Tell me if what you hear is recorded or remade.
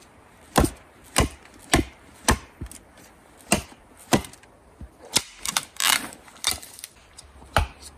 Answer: recorded